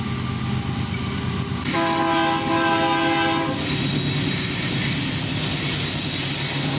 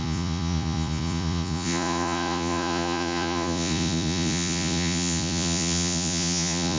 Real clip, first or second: first